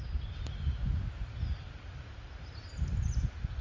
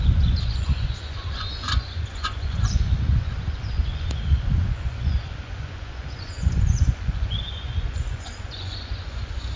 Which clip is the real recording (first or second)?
first